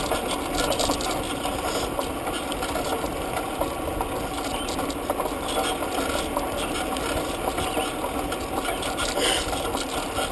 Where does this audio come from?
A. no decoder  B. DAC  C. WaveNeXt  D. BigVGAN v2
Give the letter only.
A